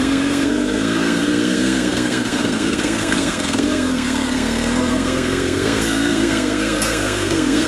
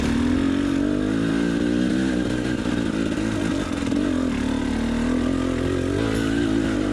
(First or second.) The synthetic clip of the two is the first